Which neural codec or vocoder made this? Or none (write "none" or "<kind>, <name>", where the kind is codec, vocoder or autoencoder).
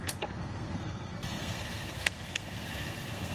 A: codec, SNAC